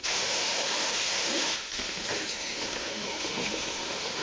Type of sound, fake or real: fake